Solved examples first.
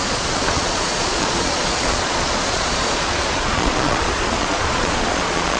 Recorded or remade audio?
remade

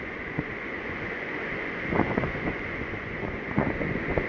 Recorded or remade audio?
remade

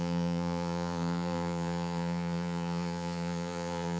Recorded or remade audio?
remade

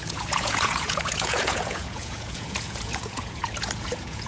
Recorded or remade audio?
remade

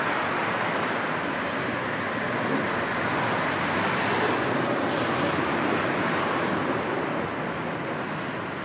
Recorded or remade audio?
recorded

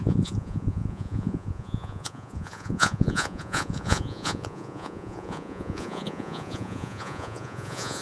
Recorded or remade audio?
remade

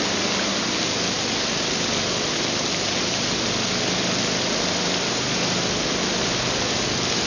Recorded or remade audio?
recorded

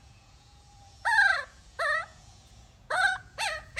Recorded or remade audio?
remade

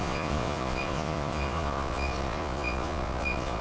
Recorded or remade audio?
remade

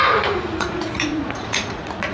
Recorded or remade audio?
remade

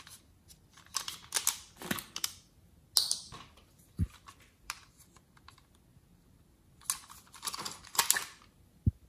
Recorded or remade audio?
recorded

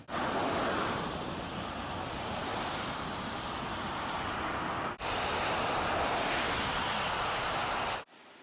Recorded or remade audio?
recorded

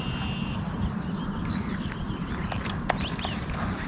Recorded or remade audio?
recorded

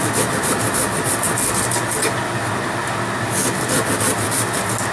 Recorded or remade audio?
recorded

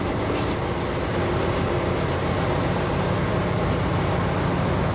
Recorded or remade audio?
recorded